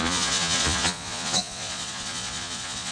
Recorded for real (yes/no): no